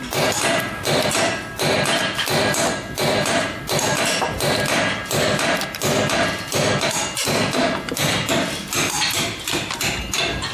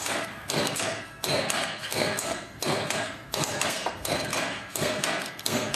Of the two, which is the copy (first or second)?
second